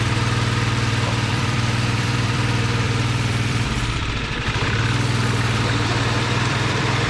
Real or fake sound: fake